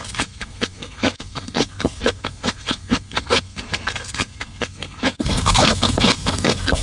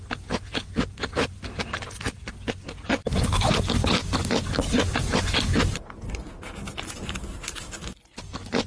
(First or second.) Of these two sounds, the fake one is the first